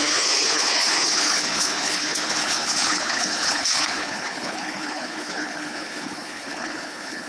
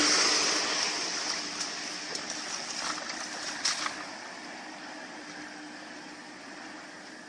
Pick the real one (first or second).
second